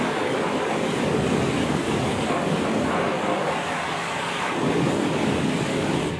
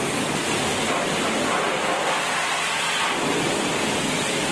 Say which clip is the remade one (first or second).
first